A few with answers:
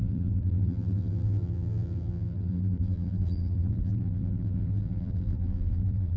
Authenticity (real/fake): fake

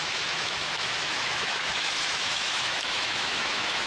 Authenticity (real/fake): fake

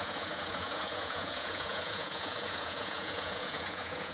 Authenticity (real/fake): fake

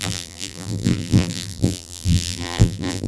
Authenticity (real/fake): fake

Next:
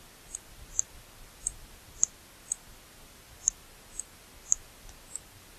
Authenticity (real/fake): real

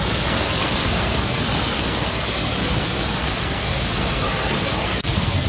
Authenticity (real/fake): fake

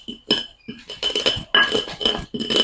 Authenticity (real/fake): real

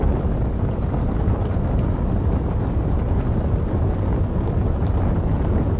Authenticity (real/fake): real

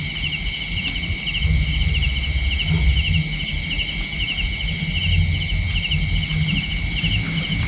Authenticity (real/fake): real